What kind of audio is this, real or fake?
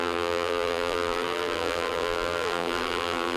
fake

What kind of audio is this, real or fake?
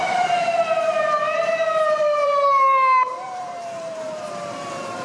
fake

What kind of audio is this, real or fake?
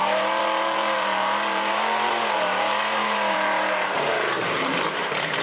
fake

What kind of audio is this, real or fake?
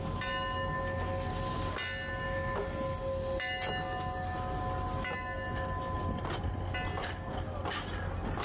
real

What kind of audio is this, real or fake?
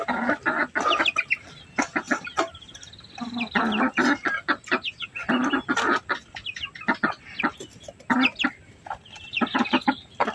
real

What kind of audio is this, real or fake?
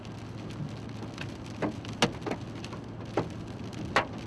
real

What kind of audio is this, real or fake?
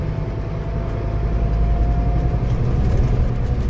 real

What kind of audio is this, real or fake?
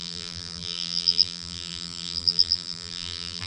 fake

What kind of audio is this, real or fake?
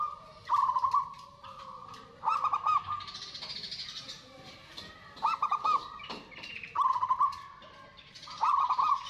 fake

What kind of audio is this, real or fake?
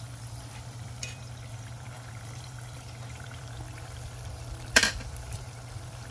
fake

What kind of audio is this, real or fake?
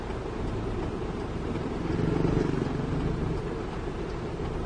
fake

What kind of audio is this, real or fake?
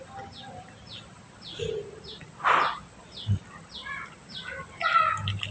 real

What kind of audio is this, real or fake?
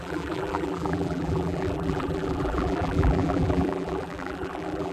fake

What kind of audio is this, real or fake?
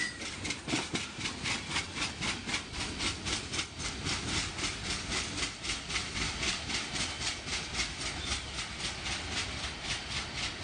fake